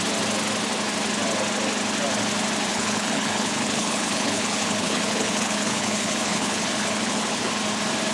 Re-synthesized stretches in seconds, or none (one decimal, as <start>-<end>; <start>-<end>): 2.7-7.5